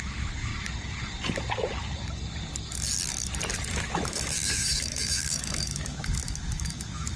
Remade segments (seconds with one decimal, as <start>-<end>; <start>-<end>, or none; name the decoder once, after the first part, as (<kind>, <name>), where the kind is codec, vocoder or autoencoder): 0.0-0.5 (autoencoder, DAC-VAE); 3.7-7.2